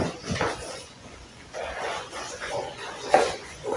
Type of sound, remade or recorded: remade